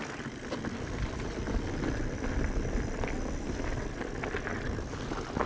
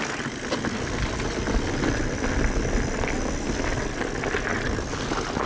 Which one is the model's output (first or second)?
first